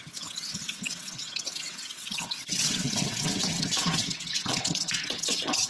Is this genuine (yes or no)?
no